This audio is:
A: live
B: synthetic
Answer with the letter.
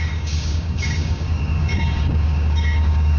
B